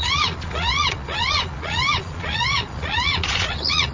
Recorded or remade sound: remade